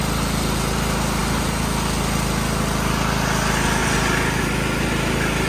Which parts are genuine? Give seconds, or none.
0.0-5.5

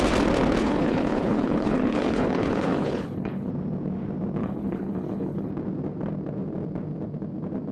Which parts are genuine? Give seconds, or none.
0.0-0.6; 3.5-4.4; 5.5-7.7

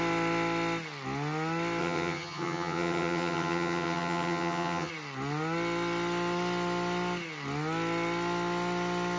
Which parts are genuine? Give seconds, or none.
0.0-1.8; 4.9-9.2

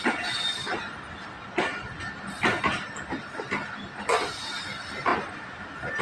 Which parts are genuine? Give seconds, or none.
0.0-6.0

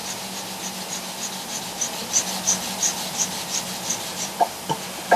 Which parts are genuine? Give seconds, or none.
0.0-5.2

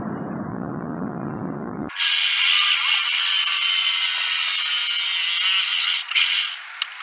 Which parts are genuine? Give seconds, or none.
0.0-0.5; 4.7-5.7; 6.4-7.0

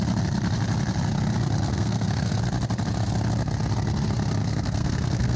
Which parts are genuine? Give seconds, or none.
0.0-1.7; 2.4-4.4

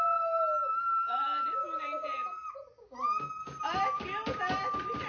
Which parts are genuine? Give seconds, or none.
0.0-5.1